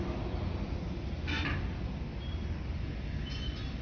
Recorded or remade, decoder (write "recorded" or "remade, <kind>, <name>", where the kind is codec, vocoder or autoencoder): recorded